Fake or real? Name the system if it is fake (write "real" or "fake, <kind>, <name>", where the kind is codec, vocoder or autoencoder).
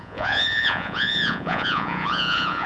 fake, vocoder, Vocos